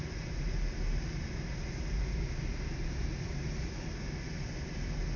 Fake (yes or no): no